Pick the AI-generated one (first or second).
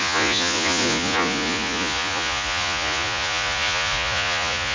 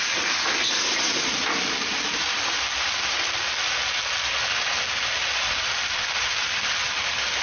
first